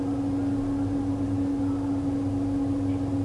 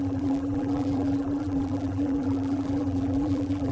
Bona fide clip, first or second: first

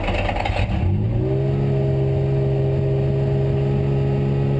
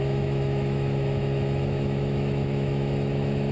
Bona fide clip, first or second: first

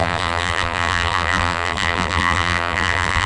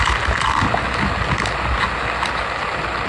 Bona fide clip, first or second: second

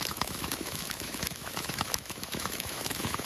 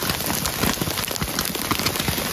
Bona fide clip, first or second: second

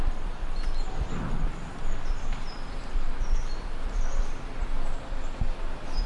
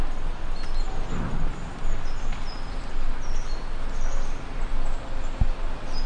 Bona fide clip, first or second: second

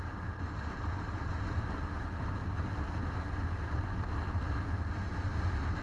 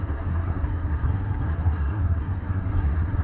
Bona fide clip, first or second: first